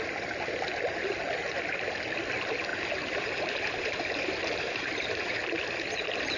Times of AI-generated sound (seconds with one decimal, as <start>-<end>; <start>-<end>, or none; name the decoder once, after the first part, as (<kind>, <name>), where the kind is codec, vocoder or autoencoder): 2.7-5.5 (vocoder, BigVGAN v2)